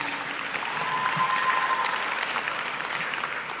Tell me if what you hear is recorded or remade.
recorded